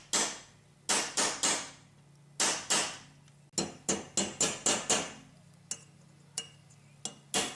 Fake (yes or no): no